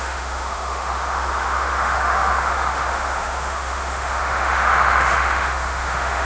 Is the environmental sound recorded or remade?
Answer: remade